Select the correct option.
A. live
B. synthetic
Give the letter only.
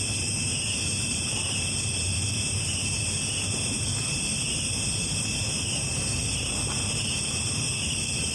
B